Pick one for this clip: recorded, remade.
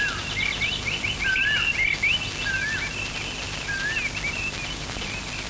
recorded